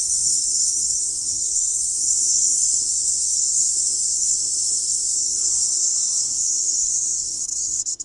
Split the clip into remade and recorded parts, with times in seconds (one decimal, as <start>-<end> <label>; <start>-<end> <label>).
0.0-8.0 remade